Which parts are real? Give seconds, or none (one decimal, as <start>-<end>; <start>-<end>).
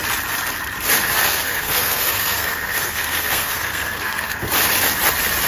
0.0-1.2; 4.5-5.5